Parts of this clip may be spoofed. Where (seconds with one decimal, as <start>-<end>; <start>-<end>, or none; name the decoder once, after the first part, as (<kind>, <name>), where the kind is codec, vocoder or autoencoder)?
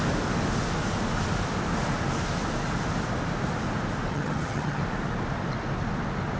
4.1-4.8 (vocoder, HiFi-GAN)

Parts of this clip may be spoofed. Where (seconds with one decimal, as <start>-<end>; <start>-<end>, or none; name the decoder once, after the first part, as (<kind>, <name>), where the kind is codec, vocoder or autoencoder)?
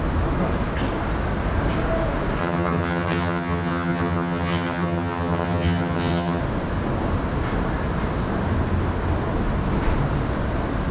2.4-6.4 (vocoder, HiFi-GAN)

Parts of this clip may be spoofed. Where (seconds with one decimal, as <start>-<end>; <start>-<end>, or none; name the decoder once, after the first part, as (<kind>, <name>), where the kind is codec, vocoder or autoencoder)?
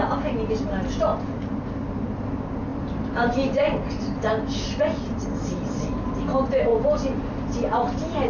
none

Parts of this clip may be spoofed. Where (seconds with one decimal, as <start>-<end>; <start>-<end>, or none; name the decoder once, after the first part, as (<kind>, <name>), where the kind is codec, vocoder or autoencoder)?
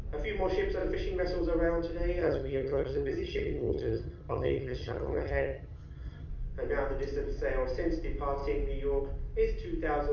2.2-6.3 (vocoder, HiFi-GAN)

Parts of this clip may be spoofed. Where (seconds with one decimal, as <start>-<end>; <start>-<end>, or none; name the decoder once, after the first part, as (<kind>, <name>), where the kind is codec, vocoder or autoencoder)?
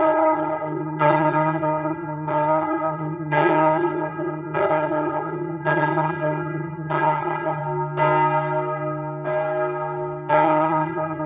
0.0-7.6 (vocoder, HiFi-GAN); 10.3-11.3